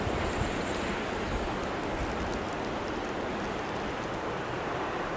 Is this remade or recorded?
recorded